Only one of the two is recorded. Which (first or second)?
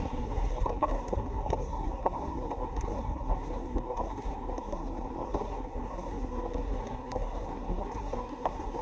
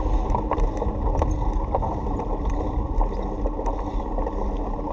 second